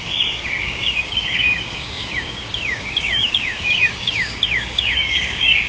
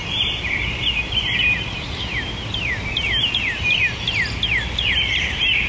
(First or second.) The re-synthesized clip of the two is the first